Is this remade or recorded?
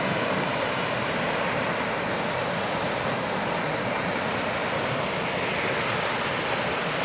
recorded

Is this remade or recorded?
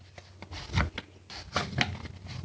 recorded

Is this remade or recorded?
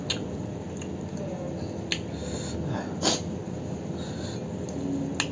recorded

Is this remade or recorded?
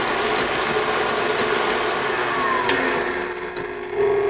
recorded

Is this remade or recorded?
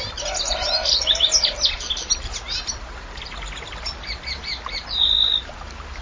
recorded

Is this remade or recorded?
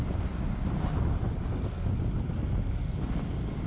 recorded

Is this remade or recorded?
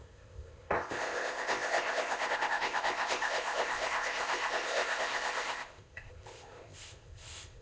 remade